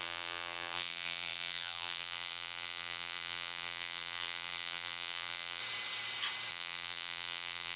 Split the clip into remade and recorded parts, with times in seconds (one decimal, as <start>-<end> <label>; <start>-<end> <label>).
0.0-5.6 remade; 5.6-6.5 recorded; 6.5-7.8 remade